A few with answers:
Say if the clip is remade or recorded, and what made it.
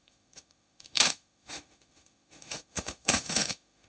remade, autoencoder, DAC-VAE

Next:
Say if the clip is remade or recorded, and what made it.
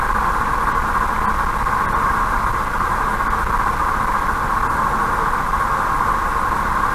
recorded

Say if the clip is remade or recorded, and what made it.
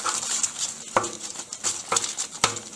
recorded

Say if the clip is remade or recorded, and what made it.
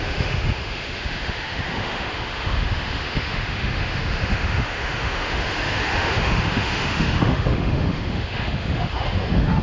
remade, autoencoder, DAC-VAE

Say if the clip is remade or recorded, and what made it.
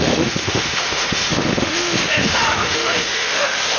remade, autoencoder, DAC-VAE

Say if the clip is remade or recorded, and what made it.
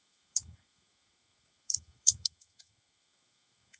remade, autoencoder, DAC-VAE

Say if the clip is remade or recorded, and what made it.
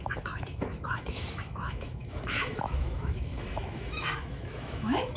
remade, autoencoder, DAC-VAE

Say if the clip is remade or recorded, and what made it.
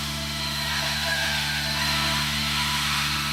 remade, autoencoder, DAC-VAE